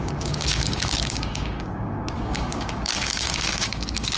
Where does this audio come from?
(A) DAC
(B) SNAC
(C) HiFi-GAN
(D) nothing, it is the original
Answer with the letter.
A